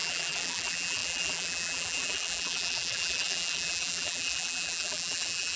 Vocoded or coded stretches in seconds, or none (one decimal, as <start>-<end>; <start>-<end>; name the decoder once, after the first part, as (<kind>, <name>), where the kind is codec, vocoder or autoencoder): 0.0-5.6 (vocoder, BigVGAN v2)